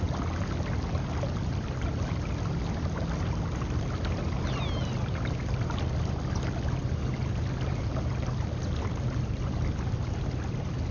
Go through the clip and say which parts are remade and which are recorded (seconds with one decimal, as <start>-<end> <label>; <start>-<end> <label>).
0.0-10.9 recorded